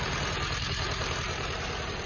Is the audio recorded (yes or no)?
no